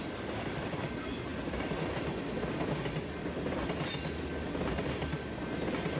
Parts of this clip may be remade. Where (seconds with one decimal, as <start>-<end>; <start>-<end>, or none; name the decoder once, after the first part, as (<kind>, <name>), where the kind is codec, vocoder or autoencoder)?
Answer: none